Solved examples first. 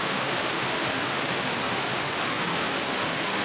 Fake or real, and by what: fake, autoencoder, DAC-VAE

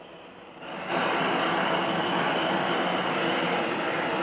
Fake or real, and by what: fake, vocoder, BigVGAN v2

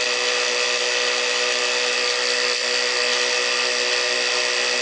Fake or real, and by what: real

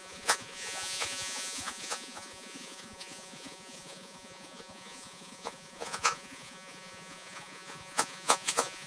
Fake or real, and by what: fake, vocoder, Vocos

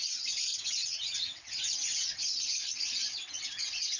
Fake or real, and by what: fake, vocoder, WaveNeXt